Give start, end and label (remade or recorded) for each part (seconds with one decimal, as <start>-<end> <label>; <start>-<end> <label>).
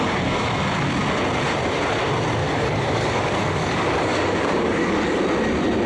0.0-2.4 recorded; 2.4-5.2 remade; 5.2-5.9 recorded